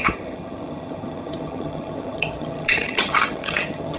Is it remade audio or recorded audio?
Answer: remade